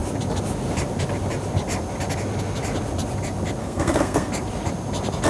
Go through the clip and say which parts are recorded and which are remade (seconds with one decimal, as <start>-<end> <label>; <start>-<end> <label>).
0.0-3.6 recorded; 3.6-4.3 remade; 4.3-5.3 recorded